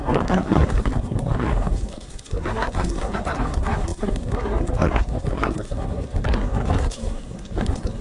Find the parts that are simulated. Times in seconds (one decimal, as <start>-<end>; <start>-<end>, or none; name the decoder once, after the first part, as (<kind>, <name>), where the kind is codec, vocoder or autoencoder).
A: 0.0-8.0 (codec, SNAC)